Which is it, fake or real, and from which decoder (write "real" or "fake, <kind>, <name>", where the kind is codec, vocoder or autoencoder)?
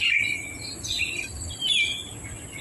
real